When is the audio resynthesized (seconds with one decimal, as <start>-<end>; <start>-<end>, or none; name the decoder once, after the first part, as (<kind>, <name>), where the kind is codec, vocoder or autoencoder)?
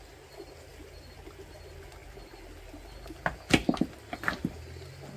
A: none